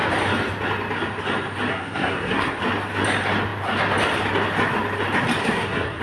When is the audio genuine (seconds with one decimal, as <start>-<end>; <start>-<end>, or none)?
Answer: 0.0-1.7; 2.6-5.4